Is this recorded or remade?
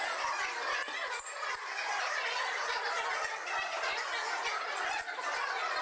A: recorded